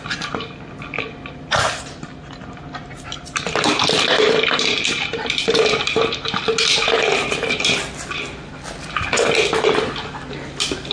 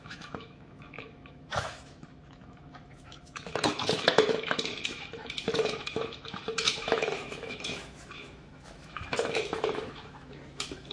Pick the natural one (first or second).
first